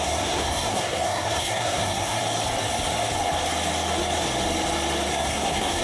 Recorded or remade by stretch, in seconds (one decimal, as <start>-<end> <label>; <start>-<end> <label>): 0.0-2.2 remade; 2.2-5.1 recorded; 5.1-5.8 remade